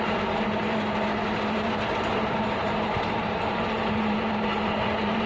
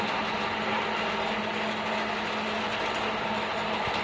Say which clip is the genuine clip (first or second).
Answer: second